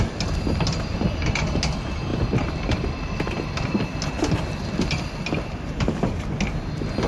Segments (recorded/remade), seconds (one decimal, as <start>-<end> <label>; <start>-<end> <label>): 0.0-7.1 recorded